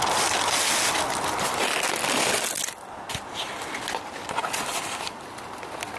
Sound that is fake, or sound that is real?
real